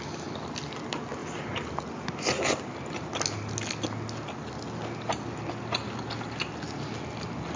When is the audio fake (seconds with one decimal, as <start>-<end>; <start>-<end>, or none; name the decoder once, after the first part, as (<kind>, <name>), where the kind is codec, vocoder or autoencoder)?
none